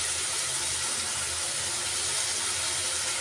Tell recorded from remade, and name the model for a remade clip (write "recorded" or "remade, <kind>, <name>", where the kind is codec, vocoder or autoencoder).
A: recorded